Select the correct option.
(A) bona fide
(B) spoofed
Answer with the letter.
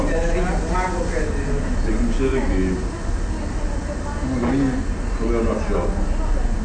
A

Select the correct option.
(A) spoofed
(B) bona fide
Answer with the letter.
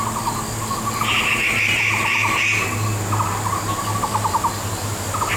B